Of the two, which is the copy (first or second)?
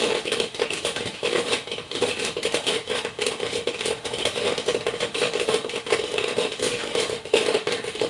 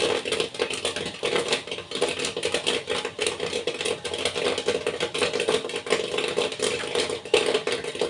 first